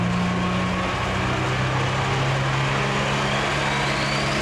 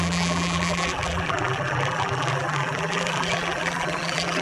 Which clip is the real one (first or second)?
first